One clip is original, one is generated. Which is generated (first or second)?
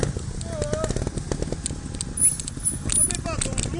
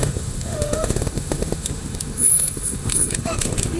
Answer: second